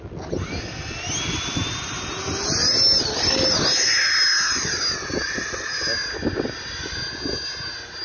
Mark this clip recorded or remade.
recorded